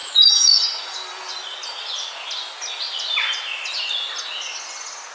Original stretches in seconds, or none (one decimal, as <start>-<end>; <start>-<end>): 0.6-5.1